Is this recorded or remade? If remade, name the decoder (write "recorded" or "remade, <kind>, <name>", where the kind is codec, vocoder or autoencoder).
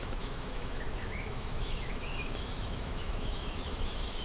remade, autoencoder, DAC-VAE